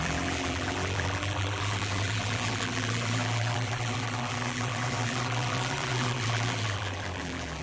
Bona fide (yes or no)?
no